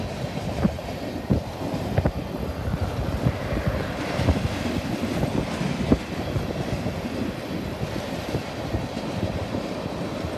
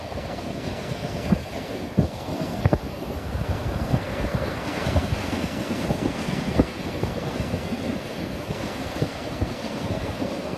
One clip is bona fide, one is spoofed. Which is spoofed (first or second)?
second